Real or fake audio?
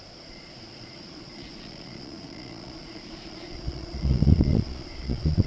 fake